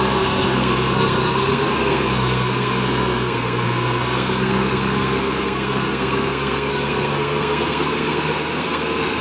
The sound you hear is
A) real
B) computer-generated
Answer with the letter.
B